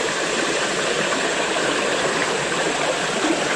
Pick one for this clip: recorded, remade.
remade